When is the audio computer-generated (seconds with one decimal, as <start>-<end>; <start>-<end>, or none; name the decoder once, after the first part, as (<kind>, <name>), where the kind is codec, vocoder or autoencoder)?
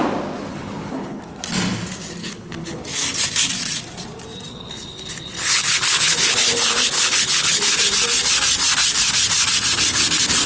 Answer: 0.5-1.2 (codec, HILCodec); 2.2-2.8; 4.5-7.8